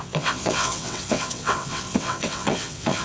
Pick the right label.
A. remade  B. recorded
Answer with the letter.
A